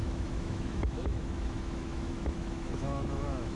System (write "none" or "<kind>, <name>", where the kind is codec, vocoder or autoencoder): autoencoder, DAC-VAE